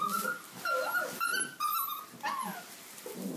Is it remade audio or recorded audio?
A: recorded